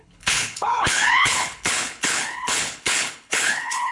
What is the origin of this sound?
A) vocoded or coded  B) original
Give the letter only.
A